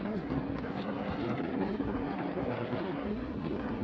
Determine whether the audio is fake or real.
fake